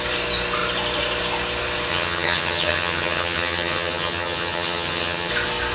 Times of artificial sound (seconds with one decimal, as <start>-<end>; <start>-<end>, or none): 1.9-5.3